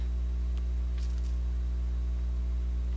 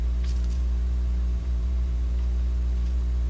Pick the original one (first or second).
first